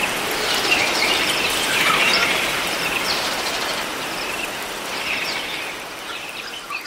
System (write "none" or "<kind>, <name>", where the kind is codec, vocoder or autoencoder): vocoder, BigVGAN v2